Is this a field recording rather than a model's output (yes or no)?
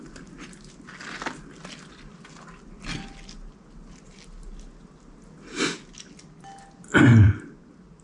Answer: yes